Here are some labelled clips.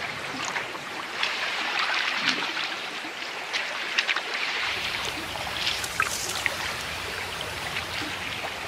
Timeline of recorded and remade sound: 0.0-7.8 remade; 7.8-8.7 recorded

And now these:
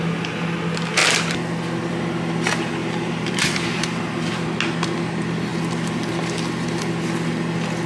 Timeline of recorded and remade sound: 0.0-2.8 recorded; 2.8-4.3 remade; 4.3-7.9 recorded